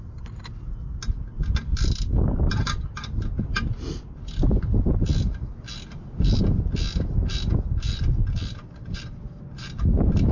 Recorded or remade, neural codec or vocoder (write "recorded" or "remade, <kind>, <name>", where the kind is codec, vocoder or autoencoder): recorded